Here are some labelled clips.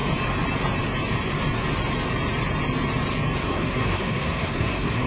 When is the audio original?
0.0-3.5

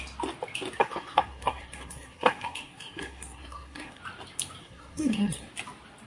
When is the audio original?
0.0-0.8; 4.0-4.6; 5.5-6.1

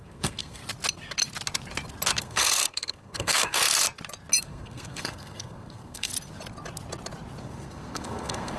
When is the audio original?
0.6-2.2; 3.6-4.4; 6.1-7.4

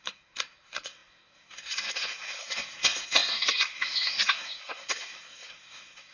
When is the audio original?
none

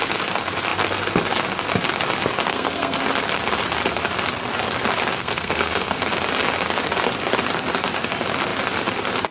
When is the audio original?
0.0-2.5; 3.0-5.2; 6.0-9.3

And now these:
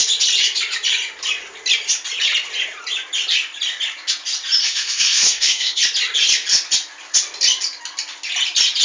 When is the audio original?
0.0-4.6; 5.8-8.8

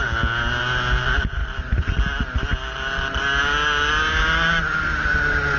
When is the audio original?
0.0-5.6

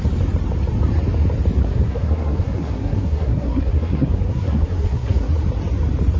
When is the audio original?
0.0-1.6; 5.3-6.2